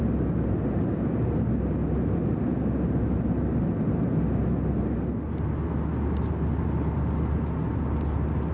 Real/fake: real